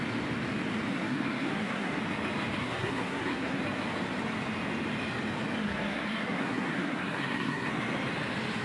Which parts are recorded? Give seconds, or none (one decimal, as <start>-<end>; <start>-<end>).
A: 0.0-0.9; 2.0-2.6; 3.6-5.6; 7.7-8.6

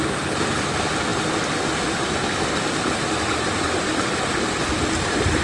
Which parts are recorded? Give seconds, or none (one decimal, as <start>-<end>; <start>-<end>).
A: 0.0-5.4